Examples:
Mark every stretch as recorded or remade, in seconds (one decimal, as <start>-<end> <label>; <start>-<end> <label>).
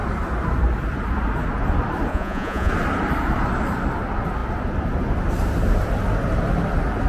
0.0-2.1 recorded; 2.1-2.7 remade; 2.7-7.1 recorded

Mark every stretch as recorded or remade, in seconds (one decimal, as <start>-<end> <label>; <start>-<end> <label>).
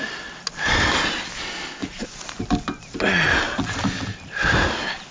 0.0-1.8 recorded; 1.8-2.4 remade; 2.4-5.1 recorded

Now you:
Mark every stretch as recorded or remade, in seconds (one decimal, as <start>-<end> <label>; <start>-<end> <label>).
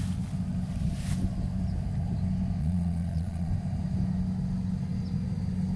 0.0-2.6 recorded; 2.6-3.5 remade; 3.5-5.8 recorded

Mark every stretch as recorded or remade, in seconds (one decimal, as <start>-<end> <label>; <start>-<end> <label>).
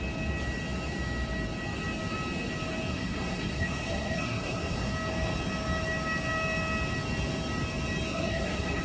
0.0-2.9 recorded; 2.9-4.9 remade; 4.9-8.1 recorded; 8.1-8.8 remade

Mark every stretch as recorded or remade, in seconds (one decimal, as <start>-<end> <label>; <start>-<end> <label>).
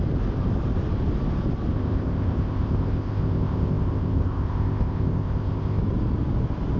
0.0-1.7 recorded; 1.7-5.8 remade; 5.8-6.8 recorded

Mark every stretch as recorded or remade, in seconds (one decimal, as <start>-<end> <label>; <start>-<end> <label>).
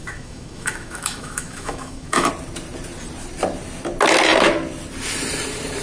0.0-2.3 remade; 2.3-5.8 recorded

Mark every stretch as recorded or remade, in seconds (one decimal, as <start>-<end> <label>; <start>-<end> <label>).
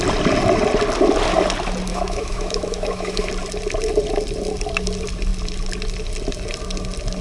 0.0-1.9 recorded; 1.9-3.3 remade; 3.3-7.2 recorded